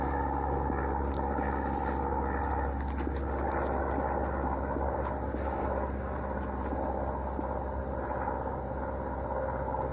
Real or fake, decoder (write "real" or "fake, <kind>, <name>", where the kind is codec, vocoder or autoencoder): real